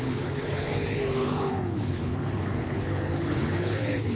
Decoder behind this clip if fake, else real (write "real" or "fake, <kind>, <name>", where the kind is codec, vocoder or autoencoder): fake, codec, HILCodec